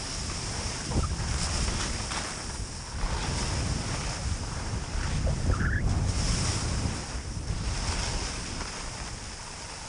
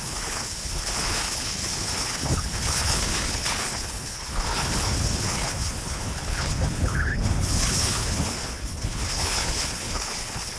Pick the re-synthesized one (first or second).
second